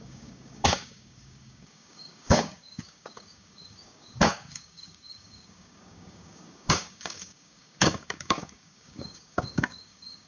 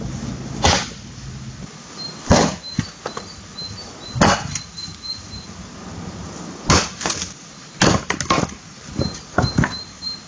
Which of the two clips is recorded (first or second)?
second